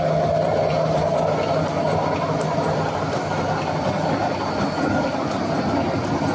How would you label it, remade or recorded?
recorded